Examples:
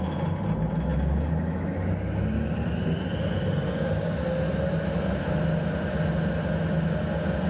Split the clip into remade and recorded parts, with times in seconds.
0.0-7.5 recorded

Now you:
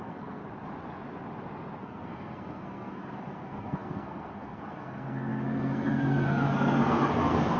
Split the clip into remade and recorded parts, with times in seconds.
0.0-0.4 remade; 0.4-1.8 recorded; 1.8-7.6 remade